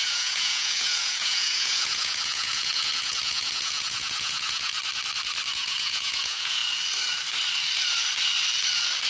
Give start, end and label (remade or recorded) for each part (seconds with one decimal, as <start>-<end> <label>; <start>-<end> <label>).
0.0-4.7 remade; 4.7-5.5 recorded; 5.5-6.6 remade; 6.6-9.1 recorded